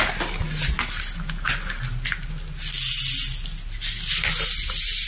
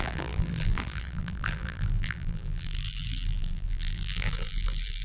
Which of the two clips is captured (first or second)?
first